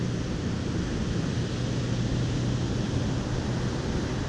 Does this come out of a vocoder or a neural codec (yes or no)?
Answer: no